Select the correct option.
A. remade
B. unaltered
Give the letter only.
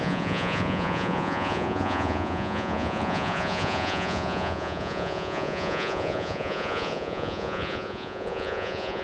A